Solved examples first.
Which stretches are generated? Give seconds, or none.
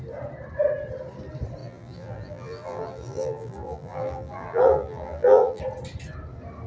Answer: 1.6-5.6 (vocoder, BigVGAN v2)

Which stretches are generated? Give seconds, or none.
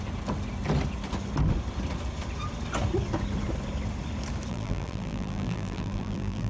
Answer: 4.5-6.5 (vocoder, BigVGAN v2)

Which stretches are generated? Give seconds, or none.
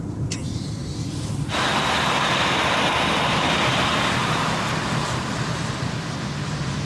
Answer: 0.8-3.5 (vocoder, BigVGAN v2); 3.9-6.8